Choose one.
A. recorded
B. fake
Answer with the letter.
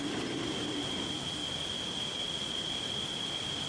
A